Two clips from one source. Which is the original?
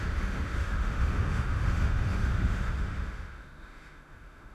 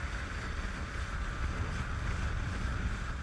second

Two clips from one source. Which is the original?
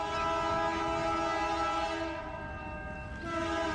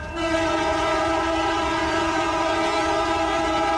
first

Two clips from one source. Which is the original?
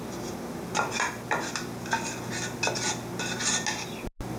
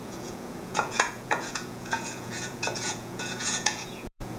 first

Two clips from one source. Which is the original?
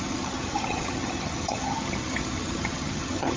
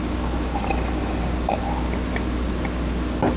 second